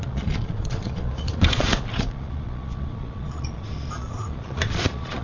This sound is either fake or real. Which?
fake